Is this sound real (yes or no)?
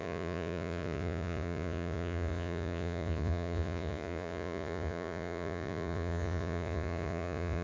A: no